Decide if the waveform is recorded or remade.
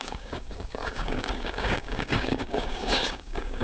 remade